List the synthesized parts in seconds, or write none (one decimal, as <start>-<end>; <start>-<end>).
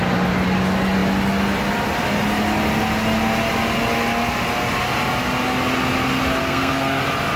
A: 6.4-7.0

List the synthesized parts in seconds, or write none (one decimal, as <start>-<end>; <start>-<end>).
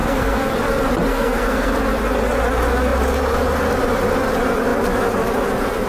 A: 0.0-0.5; 1.1-1.7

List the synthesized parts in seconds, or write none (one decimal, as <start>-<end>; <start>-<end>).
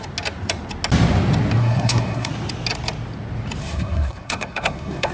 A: 1.6-2.3; 3.6-5.1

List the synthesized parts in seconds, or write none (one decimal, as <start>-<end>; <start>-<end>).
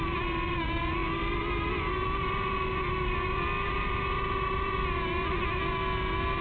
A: none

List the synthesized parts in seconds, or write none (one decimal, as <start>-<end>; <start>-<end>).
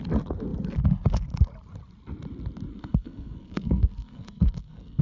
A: 2.7-5.0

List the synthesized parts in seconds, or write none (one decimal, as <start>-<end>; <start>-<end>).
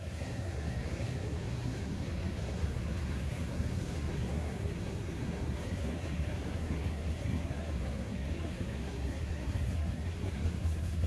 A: 0.0-11.1